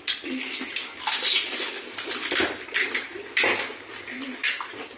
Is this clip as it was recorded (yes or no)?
yes